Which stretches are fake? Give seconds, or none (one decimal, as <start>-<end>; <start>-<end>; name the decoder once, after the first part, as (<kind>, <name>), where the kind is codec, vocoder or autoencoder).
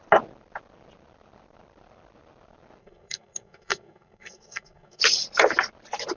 2.8-5.0 (codec, SNAC)